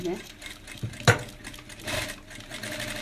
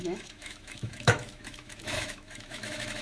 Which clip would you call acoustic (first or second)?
first